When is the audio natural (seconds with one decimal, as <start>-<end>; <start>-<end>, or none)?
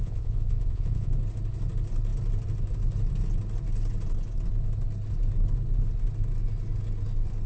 1.1-7.5